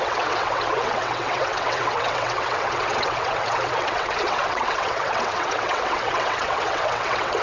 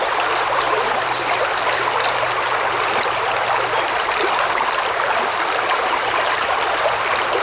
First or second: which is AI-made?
first